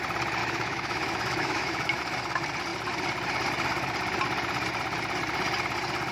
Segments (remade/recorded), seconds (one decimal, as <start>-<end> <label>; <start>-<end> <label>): 0.0-0.4 recorded; 0.4-2.0 remade; 2.0-6.1 recorded